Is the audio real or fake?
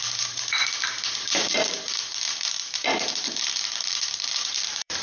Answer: fake